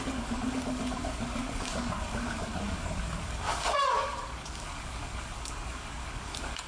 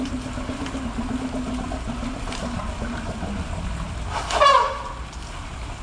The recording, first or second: second